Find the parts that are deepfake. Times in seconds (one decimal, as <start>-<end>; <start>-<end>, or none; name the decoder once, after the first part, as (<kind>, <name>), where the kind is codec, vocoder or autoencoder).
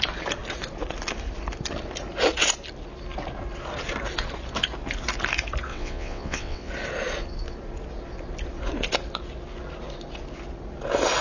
5.7-6.7 (vocoder, WaveNeXt)